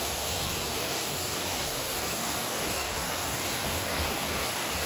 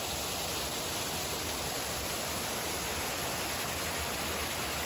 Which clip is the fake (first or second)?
first